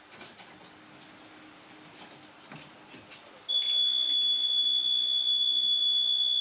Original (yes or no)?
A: yes